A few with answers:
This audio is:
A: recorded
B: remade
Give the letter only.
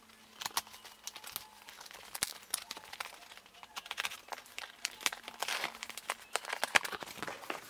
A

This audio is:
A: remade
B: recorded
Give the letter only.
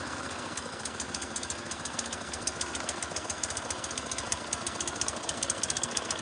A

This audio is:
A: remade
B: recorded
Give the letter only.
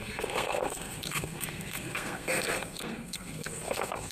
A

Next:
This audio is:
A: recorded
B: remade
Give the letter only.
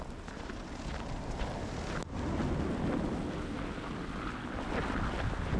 A